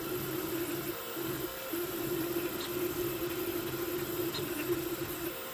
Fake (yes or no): no